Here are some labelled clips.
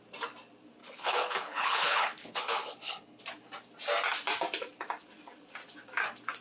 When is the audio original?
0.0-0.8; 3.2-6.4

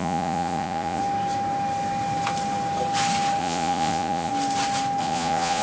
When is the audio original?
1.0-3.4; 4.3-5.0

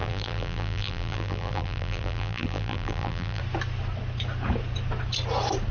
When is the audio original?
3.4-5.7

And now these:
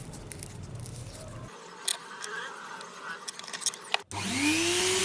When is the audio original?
0.0-5.0

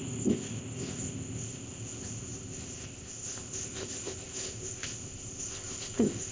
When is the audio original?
none

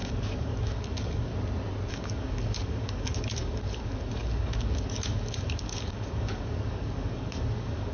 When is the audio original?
1.3-1.9